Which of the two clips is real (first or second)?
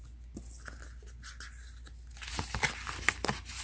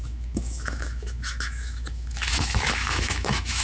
first